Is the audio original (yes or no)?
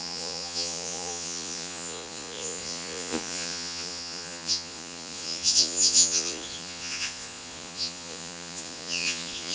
no